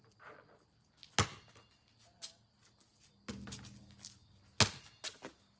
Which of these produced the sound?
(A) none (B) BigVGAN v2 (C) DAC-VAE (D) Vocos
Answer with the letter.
A